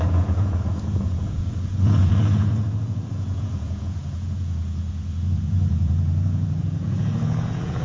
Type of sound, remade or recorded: remade